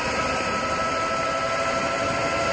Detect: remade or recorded recorded